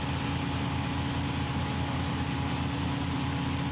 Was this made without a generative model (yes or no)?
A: yes